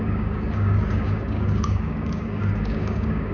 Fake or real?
fake